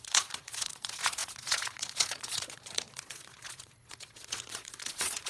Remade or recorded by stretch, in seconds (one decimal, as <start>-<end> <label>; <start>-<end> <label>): 0.0-5.3 remade